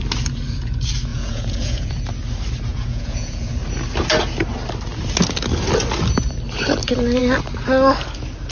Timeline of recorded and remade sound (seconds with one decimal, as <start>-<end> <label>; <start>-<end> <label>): 0.0-1.1 recorded; 1.1-1.9 remade; 1.9-2.7 recorded; 2.7-3.5 remade; 3.5-8.5 recorded